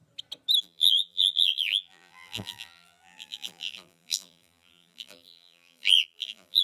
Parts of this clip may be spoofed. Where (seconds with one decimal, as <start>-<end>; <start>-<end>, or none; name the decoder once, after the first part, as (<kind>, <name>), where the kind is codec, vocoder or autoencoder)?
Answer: 0.6-6.6 (vocoder, BigVGAN v2)